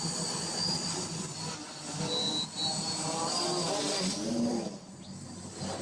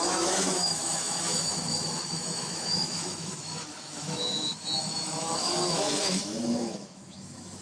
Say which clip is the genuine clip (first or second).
first